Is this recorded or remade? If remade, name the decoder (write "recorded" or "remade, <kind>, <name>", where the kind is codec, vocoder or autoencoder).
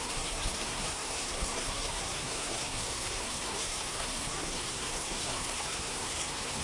remade, codec, SNAC